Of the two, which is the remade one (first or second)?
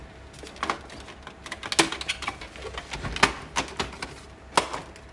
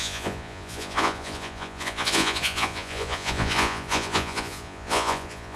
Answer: second